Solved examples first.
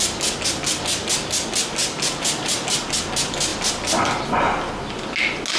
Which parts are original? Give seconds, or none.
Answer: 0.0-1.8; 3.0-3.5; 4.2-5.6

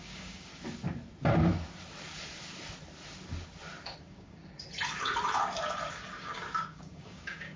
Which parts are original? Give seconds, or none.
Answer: 0.5-4.0; 4.4-5.9

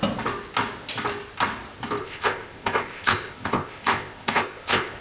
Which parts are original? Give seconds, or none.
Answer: 0.0-2.0